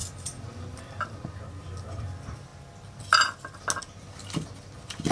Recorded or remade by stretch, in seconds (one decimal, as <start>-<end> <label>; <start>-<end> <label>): 0.0-5.1 recorded